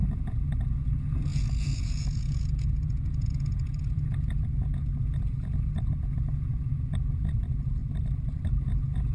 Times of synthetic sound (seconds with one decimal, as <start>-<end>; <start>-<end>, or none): 0.0-7.8; 8.6-9.1